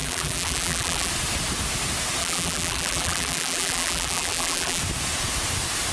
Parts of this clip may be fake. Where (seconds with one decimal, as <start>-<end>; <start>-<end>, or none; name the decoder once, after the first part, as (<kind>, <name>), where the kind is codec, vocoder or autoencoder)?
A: 0.0-1.1 (vocoder, BigVGAN v2); 2.2-4.8